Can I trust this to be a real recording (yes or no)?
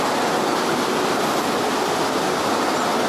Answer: no